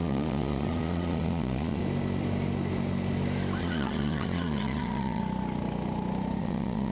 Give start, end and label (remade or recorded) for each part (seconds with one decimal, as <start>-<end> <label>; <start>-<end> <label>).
0.0-1.8 remade; 1.8-3.6 recorded; 3.6-5.2 remade; 5.2-6.4 recorded; 6.4-6.9 remade